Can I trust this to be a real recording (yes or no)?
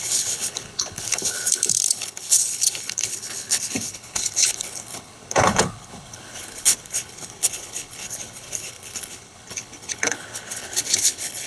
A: no